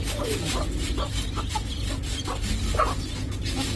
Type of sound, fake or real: real